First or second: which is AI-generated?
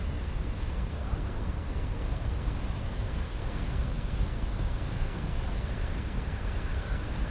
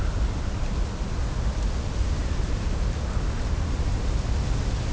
first